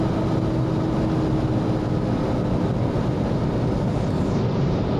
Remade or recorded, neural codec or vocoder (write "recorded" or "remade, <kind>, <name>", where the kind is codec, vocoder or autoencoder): recorded